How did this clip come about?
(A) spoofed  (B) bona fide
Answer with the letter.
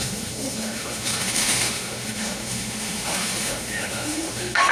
A